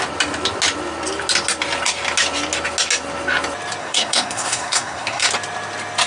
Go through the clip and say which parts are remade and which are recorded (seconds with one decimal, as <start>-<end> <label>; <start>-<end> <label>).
0.0-3.8 recorded; 3.8-5.3 remade; 5.3-6.1 recorded